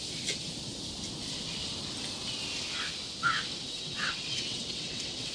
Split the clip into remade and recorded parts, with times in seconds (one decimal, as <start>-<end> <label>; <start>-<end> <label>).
0.0-3.7 recorded; 3.7-5.3 remade